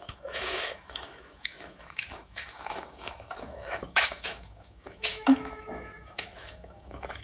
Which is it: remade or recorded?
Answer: remade